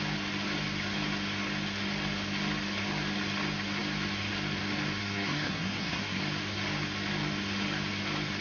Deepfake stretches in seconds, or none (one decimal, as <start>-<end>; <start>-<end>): 5.0-6.2